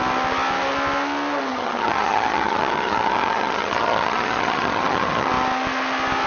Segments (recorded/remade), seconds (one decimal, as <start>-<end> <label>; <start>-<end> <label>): 0.0-1.5 recorded; 1.5-5.3 remade; 5.3-6.3 recorded